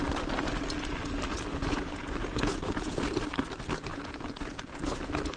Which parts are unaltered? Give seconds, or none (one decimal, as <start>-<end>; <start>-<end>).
0.0-1.5; 3.0-3.9; 5.0-5.4